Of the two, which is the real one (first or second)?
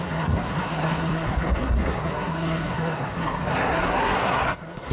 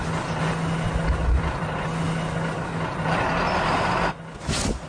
second